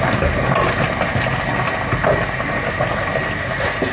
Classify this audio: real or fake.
real